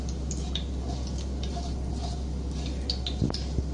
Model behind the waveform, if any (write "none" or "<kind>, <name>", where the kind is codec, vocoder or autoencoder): none